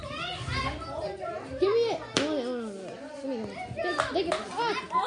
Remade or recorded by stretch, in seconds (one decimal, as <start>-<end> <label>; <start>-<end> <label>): 0.0-5.1 recorded